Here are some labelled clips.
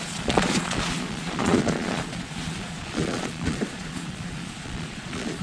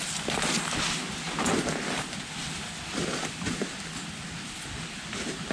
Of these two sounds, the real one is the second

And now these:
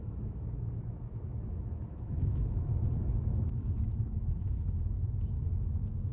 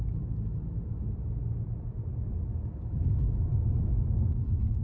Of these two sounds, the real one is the second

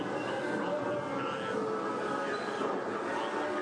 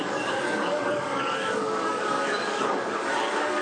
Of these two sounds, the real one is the first